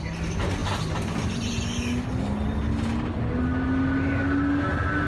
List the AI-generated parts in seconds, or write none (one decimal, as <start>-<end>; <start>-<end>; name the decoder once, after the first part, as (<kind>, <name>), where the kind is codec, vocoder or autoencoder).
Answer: 0.6-1.5 (vocoder, BigVGAN v2)